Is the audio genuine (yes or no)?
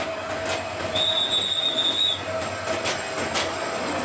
yes